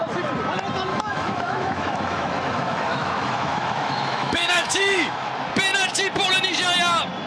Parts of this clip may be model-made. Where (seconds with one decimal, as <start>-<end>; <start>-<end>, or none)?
0.9-5.3